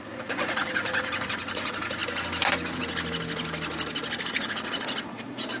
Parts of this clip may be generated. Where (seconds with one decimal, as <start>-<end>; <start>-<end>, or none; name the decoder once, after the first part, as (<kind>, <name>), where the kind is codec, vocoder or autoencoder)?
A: 0.0-2.0 (vocoder, Vocos); 4.2-5.6